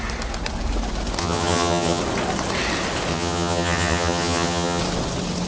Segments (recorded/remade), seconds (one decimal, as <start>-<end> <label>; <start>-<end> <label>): 0.0-1.2 recorded; 1.2-2.0 remade; 2.0-3.1 recorded; 3.1-4.8 remade; 4.8-5.5 recorded